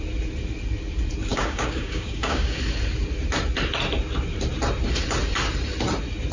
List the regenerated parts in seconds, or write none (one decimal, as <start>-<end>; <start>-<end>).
1.3-2.6

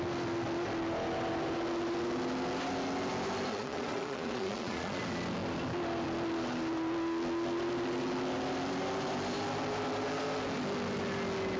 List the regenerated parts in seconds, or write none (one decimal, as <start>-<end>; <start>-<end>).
3.5-5.0

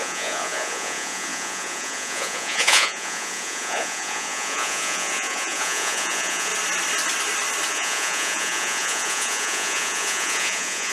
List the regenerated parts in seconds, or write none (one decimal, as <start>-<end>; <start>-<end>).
0.0-6.5; 7.7-10.9

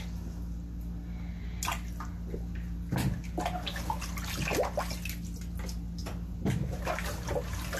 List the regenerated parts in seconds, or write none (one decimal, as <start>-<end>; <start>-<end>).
6.0-6.8

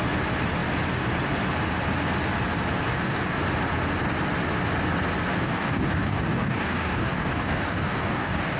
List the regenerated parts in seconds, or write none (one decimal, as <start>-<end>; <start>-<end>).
2.9-3.4; 5.3-8.6